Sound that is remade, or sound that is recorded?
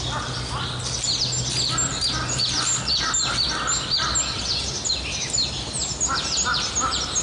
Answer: recorded